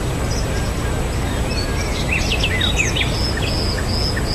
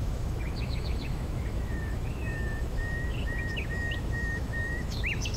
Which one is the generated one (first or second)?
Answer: second